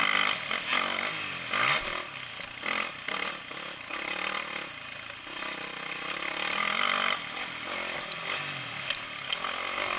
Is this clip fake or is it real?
real